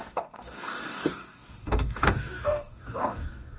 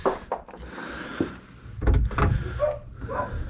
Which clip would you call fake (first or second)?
first